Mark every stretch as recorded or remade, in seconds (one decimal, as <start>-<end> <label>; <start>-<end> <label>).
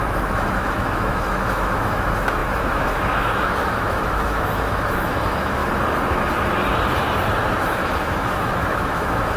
0.0-5.6 remade; 5.6-7.6 recorded; 7.6-9.4 remade